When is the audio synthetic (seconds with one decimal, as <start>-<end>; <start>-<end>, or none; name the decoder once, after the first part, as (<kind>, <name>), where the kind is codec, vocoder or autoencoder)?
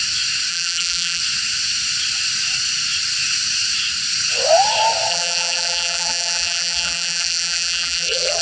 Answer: 0.5-1.2 (vocoder, BigVGAN v2); 5.1-8.4